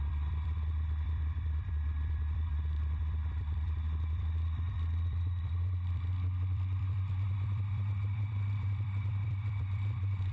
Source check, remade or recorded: remade